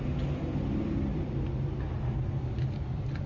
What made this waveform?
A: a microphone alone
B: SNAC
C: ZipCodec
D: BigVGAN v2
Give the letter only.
A